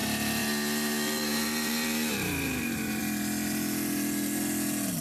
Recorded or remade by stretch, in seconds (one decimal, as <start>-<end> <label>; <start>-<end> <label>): 0.0-3.0 remade; 3.0-5.0 recorded